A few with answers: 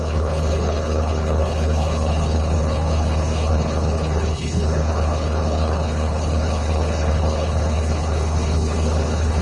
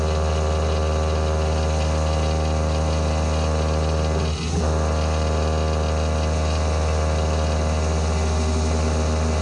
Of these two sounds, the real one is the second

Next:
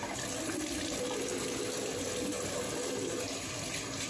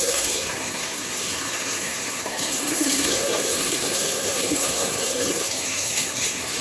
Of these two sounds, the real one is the first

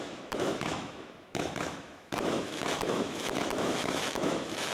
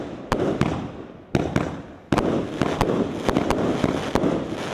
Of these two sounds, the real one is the second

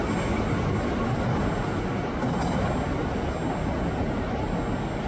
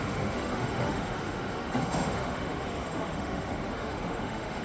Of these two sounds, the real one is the first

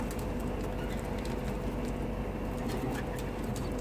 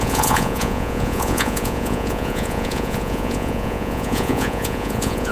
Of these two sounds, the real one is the first